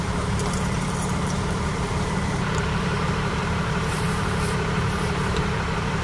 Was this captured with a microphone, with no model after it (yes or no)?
no